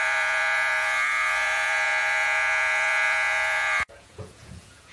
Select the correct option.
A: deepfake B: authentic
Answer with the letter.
A